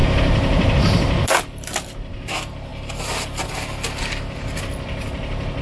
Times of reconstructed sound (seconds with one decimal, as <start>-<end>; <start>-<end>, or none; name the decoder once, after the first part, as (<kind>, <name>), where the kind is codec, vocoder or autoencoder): 0.0-0.7 (vocoder, BigVGAN v2)